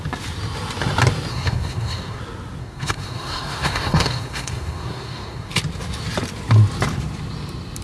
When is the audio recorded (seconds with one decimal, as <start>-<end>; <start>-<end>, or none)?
0.0-1.3; 2.2-2.6; 5.5-7.8